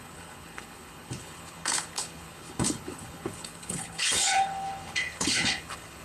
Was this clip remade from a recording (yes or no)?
yes